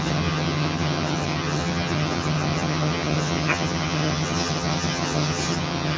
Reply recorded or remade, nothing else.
remade